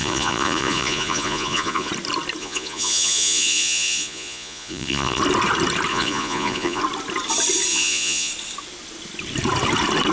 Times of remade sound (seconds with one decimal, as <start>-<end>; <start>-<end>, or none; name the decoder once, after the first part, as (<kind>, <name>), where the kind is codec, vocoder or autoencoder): 0.0-1.9 (vocoder, Vocos); 2.4-5.2; 5.9-6.8; 7.7-8.3